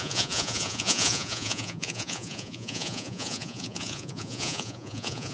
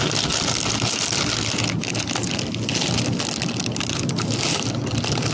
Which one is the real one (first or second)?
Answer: second